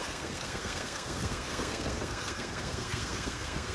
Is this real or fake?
fake